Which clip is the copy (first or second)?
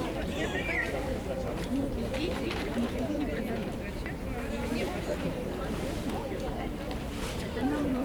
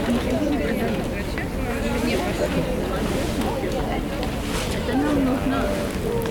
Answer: first